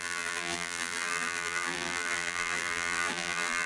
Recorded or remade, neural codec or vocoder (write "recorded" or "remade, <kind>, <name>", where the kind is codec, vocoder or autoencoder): remade, vocoder, BigVGAN v2